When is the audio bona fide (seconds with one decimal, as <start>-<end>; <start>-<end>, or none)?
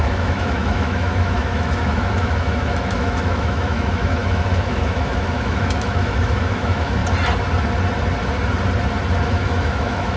7.0-9.3